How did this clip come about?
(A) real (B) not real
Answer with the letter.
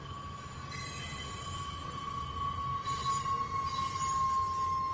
A